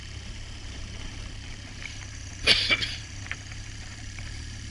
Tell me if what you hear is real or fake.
fake